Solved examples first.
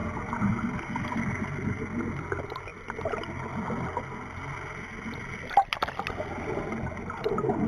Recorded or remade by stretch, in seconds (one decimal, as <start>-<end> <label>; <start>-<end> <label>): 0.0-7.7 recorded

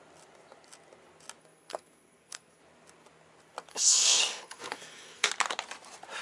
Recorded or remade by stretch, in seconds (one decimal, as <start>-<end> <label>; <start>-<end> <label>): 0.0-1.4 recorded; 1.4-2.6 remade; 2.6-3.7 recorded; 3.7-5.3 remade; 5.3-6.2 recorded

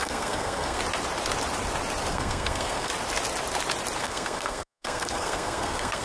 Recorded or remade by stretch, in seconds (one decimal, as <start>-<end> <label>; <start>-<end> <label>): 0.0-0.8 remade; 0.8-2.1 recorded; 2.1-2.9 remade; 2.9-4.0 recorded; 4.0-6.0 remade

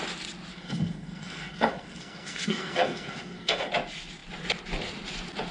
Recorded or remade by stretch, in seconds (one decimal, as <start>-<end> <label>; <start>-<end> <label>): 0.0-0.5 recorded; 0.5-3.7 remade; 3.7-5.5 recorded

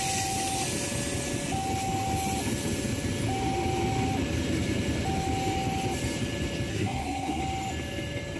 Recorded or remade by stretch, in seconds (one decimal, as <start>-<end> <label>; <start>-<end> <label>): 0.0-6.7 recorded; 6.7-7.4 remade; 7.4-8.4 recorded

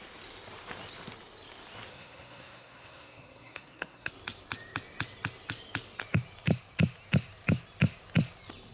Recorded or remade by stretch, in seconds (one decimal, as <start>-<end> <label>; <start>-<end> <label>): 0.0-1.9 recorded; 1.9-4.1 remade; 4.1-8.7 recorded

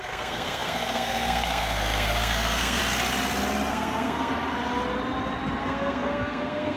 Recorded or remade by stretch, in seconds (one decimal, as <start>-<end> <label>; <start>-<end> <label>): 0.0-2.8 remade; 2.8-3.7 recorded; 3.7-4.3 remade; 4.3-5.6 recorded; 5.6-6.8 remade

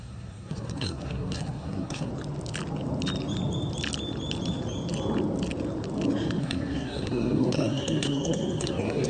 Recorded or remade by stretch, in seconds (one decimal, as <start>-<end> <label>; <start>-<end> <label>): 0.0-2.1 remade; 2.1-6.4 recorded; 6.4-9.1 remade